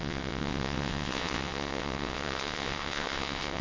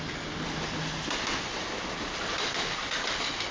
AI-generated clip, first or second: first